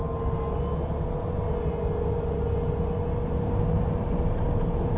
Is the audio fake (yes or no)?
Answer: no